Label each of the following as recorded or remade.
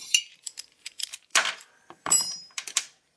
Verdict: remade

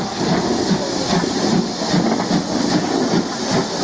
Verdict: recorded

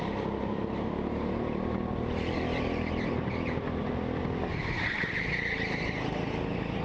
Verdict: recorded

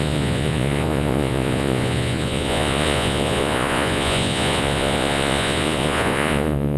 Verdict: remade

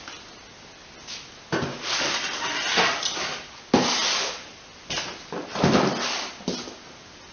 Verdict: recorded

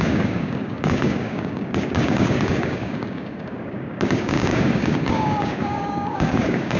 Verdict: remade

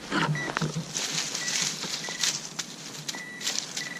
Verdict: remade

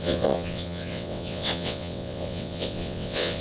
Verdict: remade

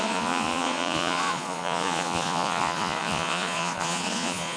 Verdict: remade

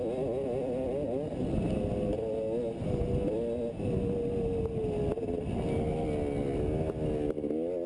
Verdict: recorded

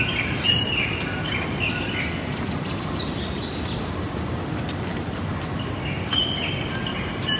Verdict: recorded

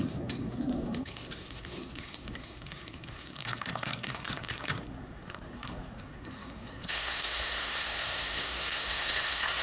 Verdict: remade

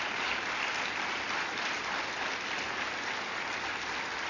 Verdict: recorded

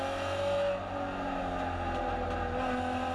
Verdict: recorded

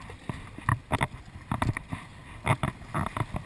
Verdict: recorded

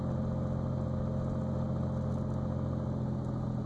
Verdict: recorded